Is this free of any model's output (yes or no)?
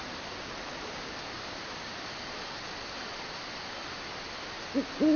yes